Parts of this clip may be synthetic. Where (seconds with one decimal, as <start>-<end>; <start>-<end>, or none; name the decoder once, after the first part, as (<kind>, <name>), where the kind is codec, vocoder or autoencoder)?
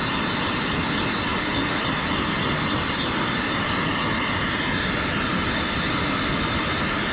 none